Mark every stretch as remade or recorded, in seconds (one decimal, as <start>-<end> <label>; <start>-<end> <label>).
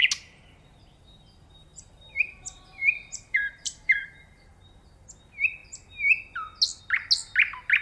0.0-1.7 recorded; 1.7-4.5 remade; 4.5-7.8 recorded